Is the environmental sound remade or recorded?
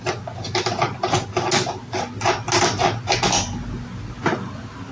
recorded